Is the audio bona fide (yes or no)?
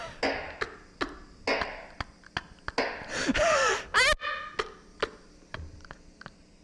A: yes